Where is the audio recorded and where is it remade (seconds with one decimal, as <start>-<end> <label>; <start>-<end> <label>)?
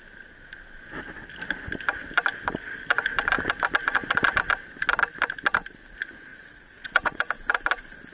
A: 0.0-6.3 recorded; 6.3-7.3 remade; 7.3-8.1 recorded